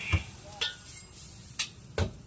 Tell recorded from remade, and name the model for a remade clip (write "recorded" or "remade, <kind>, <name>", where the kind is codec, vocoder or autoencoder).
recorded